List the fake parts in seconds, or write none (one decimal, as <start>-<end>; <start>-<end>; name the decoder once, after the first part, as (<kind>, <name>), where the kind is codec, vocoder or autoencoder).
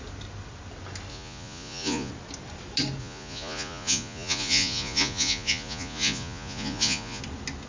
1.1-2.1 (vocoder, Vocos); 3.0-7.2